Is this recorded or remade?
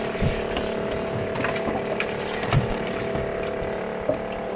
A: remade